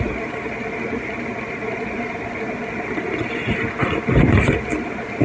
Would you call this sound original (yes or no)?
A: yes